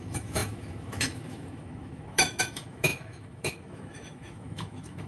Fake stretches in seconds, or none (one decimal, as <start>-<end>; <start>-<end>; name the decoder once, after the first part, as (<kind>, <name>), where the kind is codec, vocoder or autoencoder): 0.0-5.1 (autoencoder, DAC-VAE)